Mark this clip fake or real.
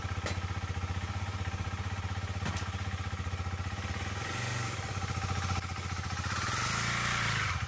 real